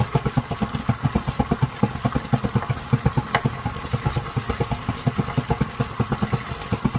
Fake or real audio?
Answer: real